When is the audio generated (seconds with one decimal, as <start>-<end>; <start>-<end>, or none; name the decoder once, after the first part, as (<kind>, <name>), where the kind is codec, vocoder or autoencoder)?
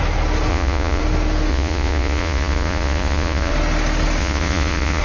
0.5-1.0 (vocoder, Vocos); 1.5-3.5; 4.2-5.0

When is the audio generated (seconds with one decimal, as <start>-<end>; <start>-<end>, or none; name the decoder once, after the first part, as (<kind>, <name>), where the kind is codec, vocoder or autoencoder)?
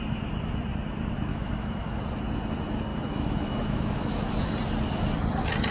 1.3-2.0 (autoencoder, DAC-VAE); 2.9-4.5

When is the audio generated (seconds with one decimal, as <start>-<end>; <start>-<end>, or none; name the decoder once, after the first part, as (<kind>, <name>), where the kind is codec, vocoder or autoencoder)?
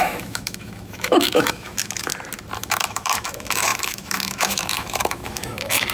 0.0-2.1 (autoencoder, DAC-VAE); 2.6-5.9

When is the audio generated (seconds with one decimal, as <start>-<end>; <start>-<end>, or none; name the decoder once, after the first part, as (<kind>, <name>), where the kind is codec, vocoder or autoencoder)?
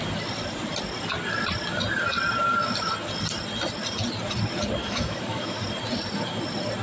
4.8-5.6 (autoencoder, DAC-VAE)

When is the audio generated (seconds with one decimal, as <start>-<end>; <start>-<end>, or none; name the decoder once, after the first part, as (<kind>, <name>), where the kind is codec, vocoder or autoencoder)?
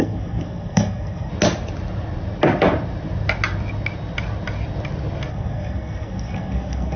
0.0-1.3 (codec, SNAC); 5.3-7.0